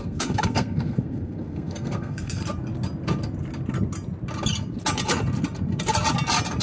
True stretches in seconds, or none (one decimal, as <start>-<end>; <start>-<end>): 2.4-6.6